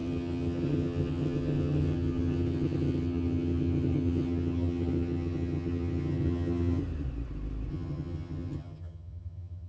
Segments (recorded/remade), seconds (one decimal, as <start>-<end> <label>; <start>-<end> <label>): 0.0-6.8 remade; 6.8-7.7 recorded; 7.7-9.7 remade